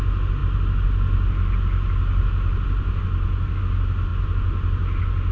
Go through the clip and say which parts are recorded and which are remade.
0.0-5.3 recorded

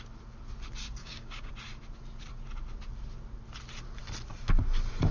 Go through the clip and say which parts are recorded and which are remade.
0.0-1.0 recorded; 1.0-1.5 remade; 1.5-5.1 recorded

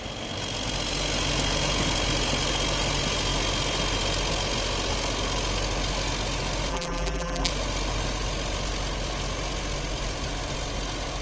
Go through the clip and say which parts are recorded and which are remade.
0.0-6.7 recorded; 6.7-7.5 remade; 7.5-11.2 recorded

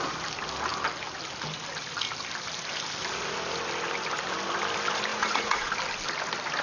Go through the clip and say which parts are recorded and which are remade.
0.0-5.1 recorded; 5.1-5.7 remade; 5.7-6.6 recorded